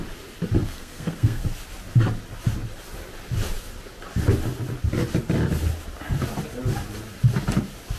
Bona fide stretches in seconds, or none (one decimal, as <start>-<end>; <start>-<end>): 0.0-0.6; 1.4-8.0